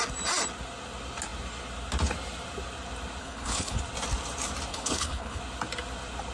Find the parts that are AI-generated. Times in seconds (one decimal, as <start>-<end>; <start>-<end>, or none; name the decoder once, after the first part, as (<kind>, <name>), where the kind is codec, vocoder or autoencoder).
3.2-3.8 (codec, HILCodec); 4.7-5.4